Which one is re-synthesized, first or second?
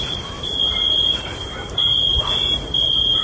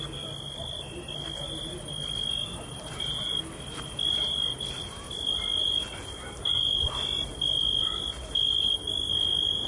first